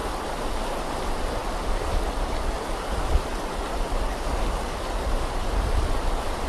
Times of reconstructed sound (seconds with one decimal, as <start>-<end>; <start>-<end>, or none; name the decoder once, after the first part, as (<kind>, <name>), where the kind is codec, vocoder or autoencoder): none